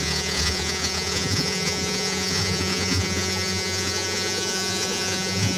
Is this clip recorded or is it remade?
remade